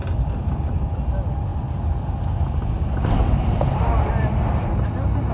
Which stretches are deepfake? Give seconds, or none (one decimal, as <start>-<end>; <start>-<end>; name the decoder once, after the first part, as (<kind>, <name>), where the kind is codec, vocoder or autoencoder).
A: none